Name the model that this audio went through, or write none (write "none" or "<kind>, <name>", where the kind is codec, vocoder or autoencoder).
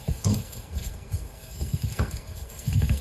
codec, SNAC